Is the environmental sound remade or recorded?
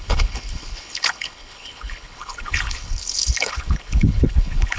remade